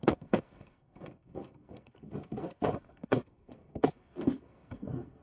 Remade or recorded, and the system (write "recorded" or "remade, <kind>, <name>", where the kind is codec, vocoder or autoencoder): remade, codec, SNAC